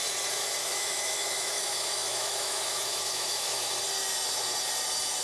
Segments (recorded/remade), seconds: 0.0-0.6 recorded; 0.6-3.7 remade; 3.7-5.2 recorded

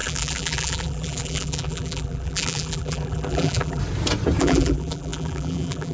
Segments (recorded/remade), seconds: 0.0-3.8 remade; 3.8-4.4 recorded; 4.4-5.9 remade

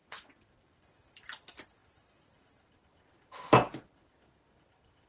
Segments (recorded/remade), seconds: 0.0-0.8 remade; 0.8-5.1 recorded

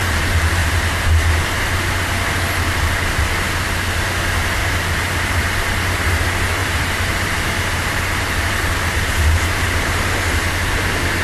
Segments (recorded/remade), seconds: 0.0-4.6 recorded; 4.6-6.1 remade; 6.1-6.6 recorded; 6.6-10.0 remade; 10.0-11.2 recorded

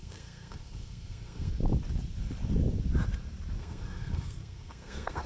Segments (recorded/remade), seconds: 0.0-1.5 remade; 1.5-3.6 recorded; 3.6-5.3 remade

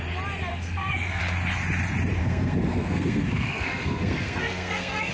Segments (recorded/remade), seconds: 0.0-0.5 recorded; 0.5-1.2 remade; 1.2-2.2 recorded; 2.2-5.1 remade

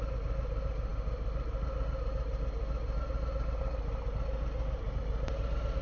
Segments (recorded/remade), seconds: 0.0-5.8 recorded